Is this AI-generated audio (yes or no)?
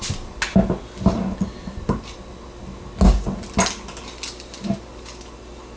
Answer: no